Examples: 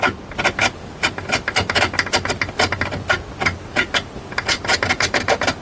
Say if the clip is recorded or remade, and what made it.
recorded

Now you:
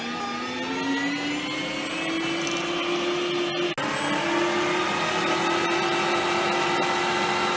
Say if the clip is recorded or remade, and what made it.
recorded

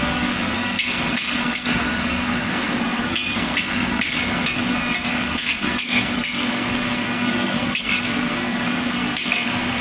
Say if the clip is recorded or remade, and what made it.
remade, codec, SNAC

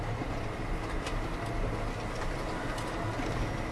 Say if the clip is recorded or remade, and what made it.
recorded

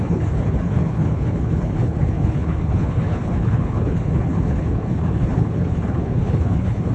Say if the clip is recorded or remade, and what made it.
remade, codec, HILCodec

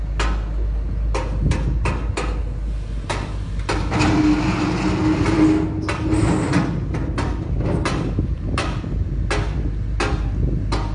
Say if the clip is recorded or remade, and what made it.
recorded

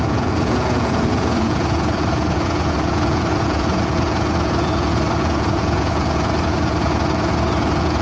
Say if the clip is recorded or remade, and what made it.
remade, vocoder, Vocos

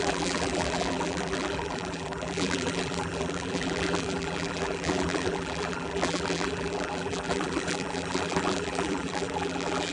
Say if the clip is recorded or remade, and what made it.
remade, vocoder, BigVGAN v2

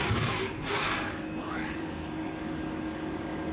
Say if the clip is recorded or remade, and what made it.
remade, codec, DAC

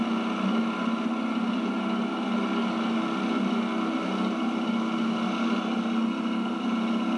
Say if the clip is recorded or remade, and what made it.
recorded